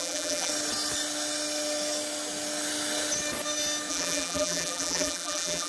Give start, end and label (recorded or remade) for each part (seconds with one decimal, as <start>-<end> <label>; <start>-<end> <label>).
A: 0.0-0.5 remade; 0.5-3.9 recorded; 3.9-5.7 remade